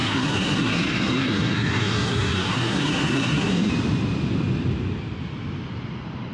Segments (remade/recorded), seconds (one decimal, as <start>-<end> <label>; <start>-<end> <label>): 0.0-3.7 remade; 3.7-6.3 recorded